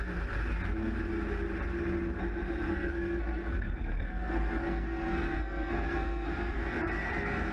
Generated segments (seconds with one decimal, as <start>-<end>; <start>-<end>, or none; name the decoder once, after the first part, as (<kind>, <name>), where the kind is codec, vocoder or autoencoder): 2.7-7.5 (codec, SNAC)